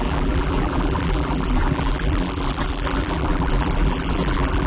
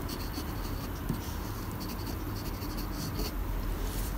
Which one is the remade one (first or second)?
first